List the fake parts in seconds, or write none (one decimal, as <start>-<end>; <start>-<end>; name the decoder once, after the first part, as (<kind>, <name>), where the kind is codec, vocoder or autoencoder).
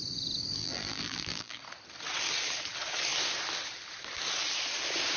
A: 0.6-1.6 (vocoder, BigVGAN v2)